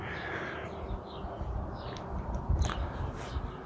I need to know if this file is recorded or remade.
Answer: recorded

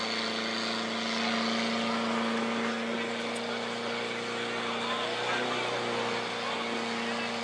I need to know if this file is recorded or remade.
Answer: recorded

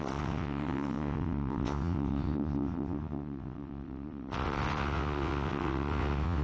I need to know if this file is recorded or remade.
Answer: remade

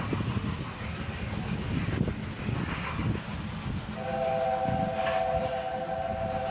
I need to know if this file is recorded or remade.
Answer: recorded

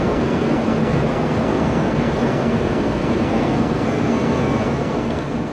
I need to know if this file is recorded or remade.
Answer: remade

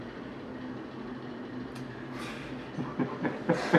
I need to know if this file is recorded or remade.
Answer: recorded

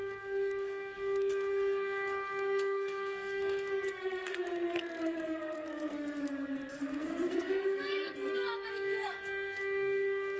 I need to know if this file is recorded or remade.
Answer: remade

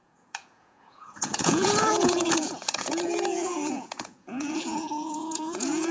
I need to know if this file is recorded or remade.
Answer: remade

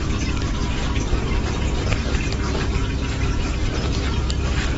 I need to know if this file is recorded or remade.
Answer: recorded